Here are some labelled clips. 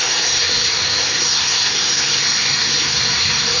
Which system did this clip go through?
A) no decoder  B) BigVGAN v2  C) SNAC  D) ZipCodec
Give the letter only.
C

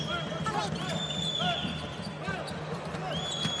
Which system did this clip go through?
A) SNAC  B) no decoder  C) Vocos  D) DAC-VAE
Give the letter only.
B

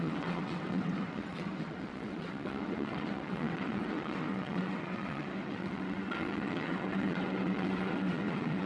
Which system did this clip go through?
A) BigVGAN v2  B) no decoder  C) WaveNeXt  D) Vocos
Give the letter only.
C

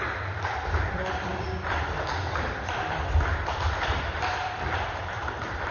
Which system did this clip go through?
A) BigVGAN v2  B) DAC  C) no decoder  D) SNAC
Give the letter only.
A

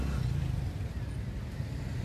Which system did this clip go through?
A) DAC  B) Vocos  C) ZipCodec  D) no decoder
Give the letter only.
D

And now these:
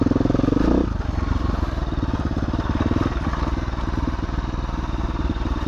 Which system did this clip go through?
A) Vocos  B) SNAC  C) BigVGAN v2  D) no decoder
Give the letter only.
D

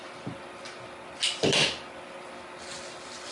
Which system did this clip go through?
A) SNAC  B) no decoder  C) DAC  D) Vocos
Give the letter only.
B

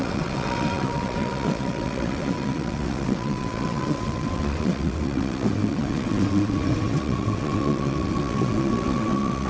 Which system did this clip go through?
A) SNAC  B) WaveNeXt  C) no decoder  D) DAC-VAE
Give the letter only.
B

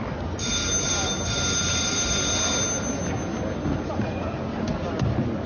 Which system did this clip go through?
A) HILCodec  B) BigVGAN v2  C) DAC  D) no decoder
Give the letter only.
D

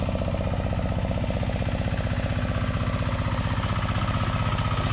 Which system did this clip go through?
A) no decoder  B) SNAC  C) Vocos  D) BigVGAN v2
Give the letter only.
A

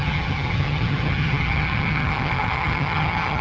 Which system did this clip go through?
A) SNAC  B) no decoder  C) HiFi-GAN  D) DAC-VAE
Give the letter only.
C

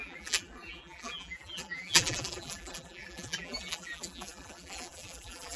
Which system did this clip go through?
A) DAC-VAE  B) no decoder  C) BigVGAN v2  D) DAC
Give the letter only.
C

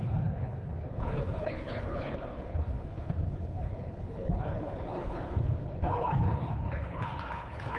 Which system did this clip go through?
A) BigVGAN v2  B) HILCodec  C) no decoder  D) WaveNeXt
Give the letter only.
B